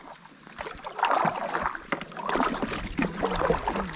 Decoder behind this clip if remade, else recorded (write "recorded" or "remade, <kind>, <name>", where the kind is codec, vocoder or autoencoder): recorded